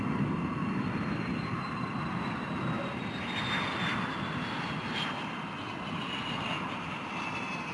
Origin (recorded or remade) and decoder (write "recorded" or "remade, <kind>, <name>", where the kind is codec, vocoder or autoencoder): recorded